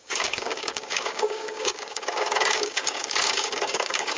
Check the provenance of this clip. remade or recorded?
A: remade